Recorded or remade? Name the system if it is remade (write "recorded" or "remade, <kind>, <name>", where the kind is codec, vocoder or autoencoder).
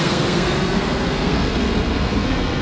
remade, codec, SNAC